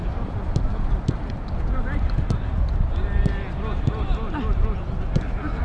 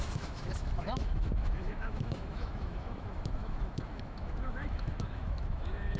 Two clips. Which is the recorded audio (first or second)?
first